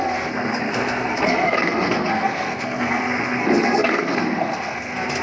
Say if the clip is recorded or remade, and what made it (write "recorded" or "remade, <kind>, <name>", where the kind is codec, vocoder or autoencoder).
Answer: remade, codec, SNAC